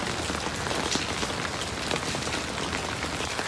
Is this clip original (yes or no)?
yes